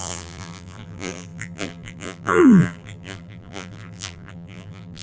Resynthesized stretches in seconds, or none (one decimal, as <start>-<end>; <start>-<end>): 0.0-5.0